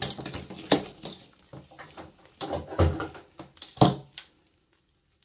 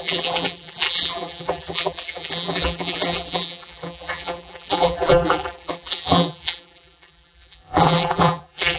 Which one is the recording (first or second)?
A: first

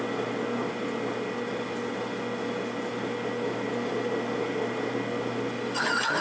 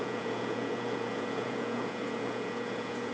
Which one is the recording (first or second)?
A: first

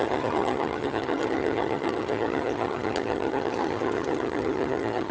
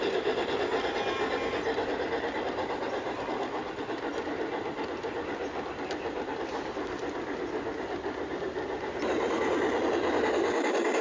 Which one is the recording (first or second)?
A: second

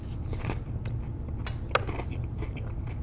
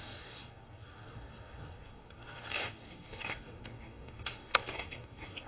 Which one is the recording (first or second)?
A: first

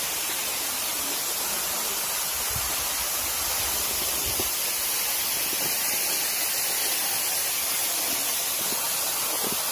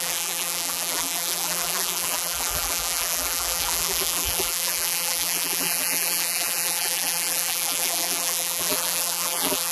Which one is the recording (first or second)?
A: first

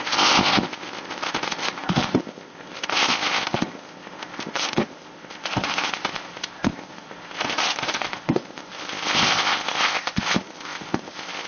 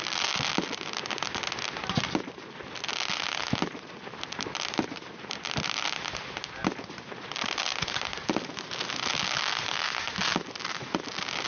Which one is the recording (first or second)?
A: second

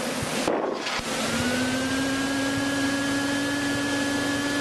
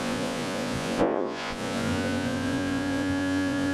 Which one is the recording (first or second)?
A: first